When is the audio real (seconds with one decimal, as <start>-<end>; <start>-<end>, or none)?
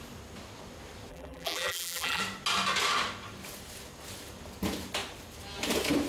0.0-1.1; 2.2-6.1